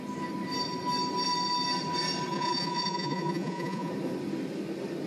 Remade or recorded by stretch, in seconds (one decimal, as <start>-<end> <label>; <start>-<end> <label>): 0.0-2.3 recorded; 2.3-3.9 remade; 3.9-5.1 recorded